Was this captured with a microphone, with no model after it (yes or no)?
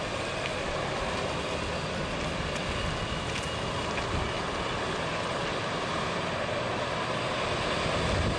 yes